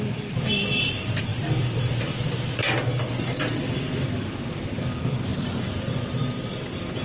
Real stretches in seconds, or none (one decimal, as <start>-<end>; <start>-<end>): 0.0-7.0